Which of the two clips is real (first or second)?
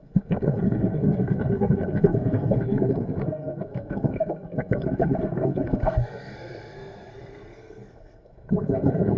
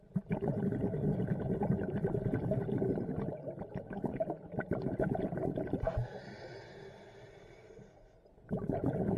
second